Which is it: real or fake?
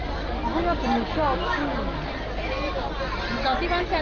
real